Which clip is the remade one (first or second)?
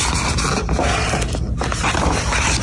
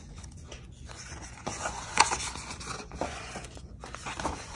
second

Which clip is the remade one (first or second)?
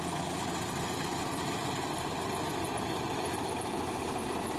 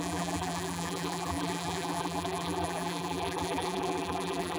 second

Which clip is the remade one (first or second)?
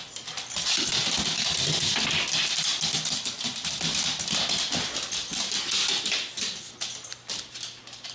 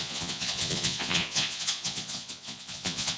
second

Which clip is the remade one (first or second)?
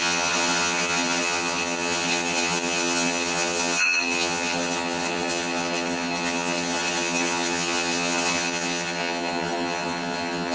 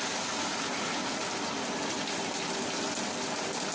first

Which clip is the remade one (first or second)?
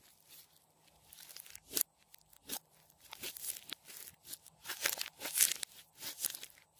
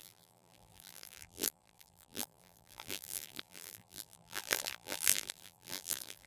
second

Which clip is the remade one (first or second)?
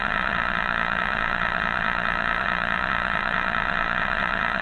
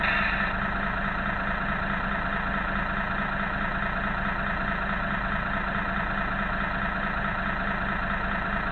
first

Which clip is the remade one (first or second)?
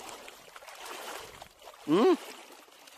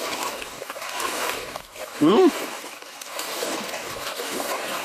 second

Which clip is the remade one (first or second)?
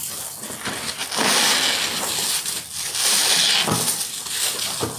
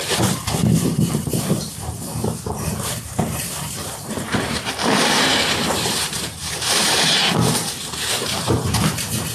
second